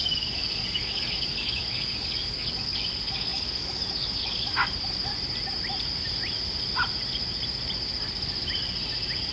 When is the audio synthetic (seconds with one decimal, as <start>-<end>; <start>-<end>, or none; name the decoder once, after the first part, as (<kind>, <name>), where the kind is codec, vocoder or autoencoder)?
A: 0.0-5.1 (codec, DAC)